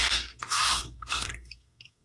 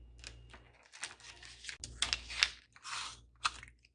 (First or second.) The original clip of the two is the second